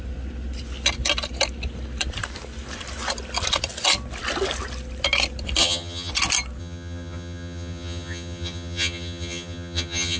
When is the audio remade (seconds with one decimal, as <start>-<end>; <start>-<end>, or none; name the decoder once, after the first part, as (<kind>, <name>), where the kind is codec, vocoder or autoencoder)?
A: 5.6-6.1 (vocoder, HiFi-GAN); 6.6-10.2